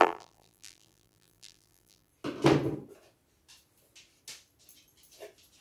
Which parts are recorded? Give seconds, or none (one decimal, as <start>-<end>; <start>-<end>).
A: 2.1-5.6